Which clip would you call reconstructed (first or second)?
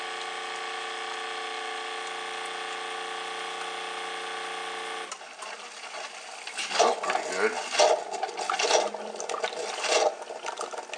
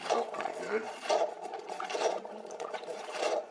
second